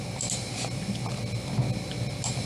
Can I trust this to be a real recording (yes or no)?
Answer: yes